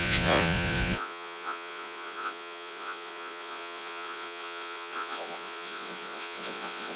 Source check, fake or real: fake